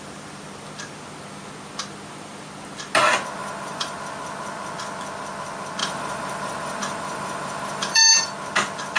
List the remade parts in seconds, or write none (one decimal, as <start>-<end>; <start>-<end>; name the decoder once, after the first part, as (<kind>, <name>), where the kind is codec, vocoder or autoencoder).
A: 3.4-4.0 (vocoder, BigVGAN v2); 5.8-8.1